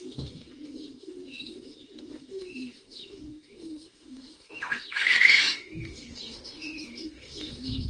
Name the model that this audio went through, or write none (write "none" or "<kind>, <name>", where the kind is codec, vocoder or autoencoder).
autoencoder, DAC-VAE